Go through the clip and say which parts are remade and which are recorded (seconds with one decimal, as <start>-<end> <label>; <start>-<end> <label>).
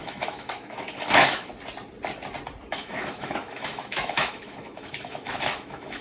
0.0-1.5 remade; 1.5-2.7 recorded; 2.7-6.0 remade